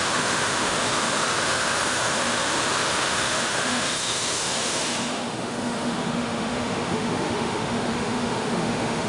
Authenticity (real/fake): fake